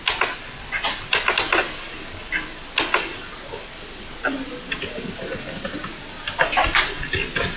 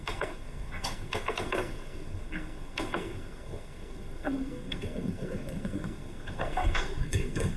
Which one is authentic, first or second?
first